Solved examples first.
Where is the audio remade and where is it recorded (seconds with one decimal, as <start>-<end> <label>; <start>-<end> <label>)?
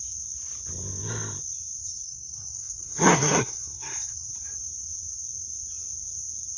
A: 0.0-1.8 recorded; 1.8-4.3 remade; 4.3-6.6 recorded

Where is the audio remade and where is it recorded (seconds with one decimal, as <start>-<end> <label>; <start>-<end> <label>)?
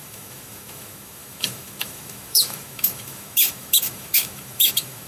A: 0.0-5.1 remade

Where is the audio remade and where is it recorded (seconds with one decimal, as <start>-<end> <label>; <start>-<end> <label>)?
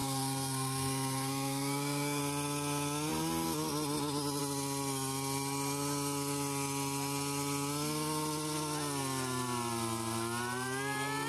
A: 0.0-2.2 remade; 2.2-11.3 recorded